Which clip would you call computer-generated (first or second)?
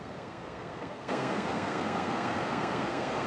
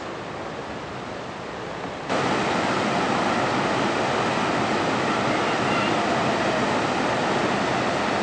first